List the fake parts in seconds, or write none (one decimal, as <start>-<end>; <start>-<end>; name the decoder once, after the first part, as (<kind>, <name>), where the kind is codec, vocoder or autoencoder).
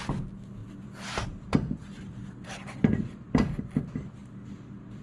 0.6-3.6 (vocoder, BigVGAN v2)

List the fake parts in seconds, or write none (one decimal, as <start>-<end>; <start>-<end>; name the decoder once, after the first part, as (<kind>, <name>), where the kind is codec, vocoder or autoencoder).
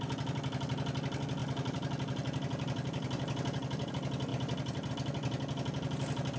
1.4-3.9 (vocoder, BigVGAN v2); 4.3-4.9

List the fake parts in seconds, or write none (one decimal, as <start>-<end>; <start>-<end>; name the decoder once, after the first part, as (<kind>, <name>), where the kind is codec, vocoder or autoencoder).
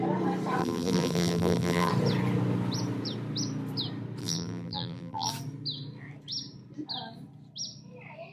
0.6-1.9 (vocoder, BigVGAN v2); 4.2-5.3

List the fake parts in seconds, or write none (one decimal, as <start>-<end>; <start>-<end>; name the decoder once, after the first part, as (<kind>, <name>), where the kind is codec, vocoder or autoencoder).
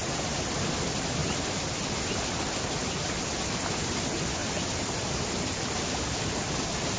0.0-0.5 (vocoder, BigVGAN v2); 4.4-5.3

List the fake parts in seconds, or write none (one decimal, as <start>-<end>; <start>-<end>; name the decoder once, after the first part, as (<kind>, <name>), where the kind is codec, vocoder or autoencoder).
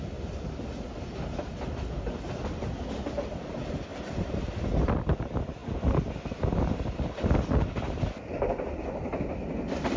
3.9-4.9 (vocoder, BigVGAN v2)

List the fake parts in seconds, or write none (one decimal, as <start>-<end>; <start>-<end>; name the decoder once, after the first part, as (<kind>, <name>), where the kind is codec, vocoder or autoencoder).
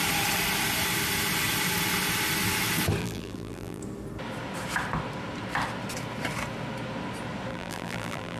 3.0-3.8 (vocoder, BigVGAN v2); 7.5-8.4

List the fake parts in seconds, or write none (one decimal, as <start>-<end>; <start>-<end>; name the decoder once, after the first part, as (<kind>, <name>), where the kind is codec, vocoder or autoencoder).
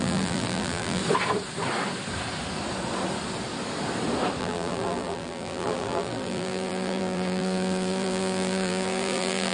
0.0-1.0 (vocoder, BigVGAN v2); 4.4-9.5